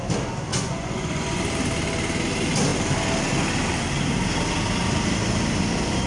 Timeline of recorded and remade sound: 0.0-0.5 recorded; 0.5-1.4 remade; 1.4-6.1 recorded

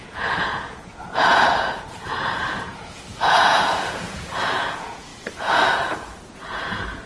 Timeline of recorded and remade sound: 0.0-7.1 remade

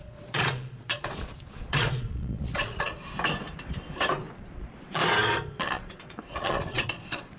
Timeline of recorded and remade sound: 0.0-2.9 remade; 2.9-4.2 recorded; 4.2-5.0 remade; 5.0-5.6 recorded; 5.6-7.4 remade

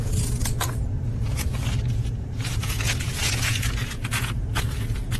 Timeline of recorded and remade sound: 0.0-5.2 remade

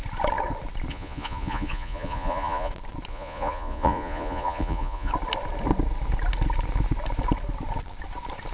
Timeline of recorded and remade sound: 0.0-0.9 recorded; 0.9-2.7 remade; 2.7-3.1 recorded; 3.1-5.1 remade; 5.1-8.5 recorded